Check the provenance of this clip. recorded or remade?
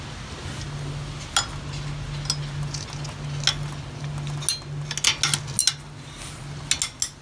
recorded